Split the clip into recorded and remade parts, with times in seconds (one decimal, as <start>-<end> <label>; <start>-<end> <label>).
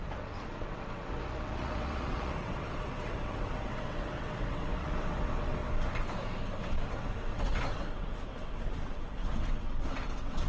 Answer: 0.0-5.6 remade; 5.6-6.6 recorded; 6.6-10.5 remade